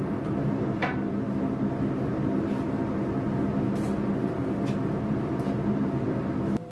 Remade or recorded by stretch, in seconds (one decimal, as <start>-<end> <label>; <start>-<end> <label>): 0.0-6.7 recorded